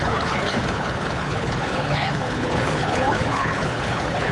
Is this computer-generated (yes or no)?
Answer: yes